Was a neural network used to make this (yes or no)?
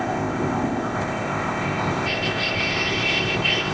yes